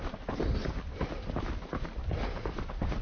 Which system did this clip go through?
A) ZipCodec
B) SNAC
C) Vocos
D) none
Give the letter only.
D